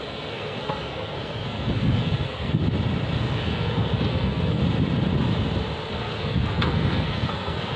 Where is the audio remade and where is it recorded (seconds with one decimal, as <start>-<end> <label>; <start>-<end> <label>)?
0.0-2.6 remade; 2.6-3.2 recorded; 3.2-4.6 remade; 4.6-5.9 recorded; 5.9-7.8 remade